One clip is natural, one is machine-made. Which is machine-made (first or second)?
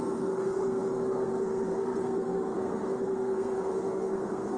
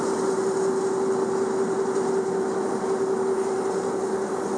first